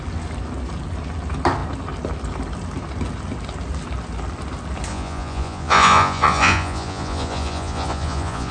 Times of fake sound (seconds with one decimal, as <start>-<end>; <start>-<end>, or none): 4.9-8.5